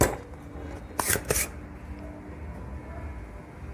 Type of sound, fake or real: real